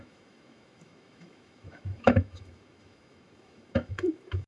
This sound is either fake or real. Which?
fake